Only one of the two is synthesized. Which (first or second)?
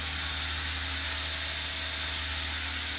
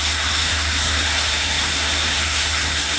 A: second